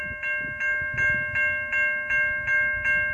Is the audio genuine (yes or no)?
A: yes